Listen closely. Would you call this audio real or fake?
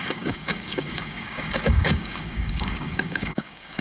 fake